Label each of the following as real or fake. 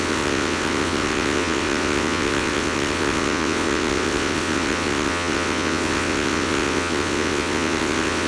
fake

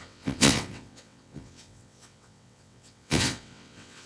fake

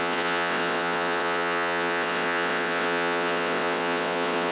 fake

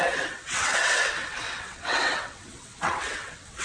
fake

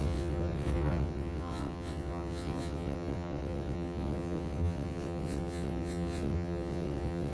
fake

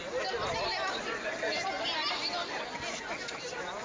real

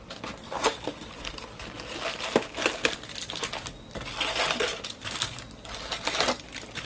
real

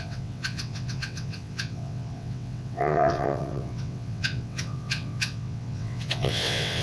fake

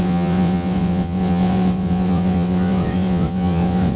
fake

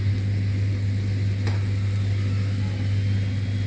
real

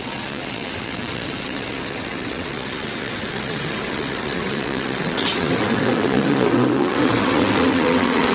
fake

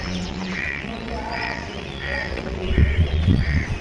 fake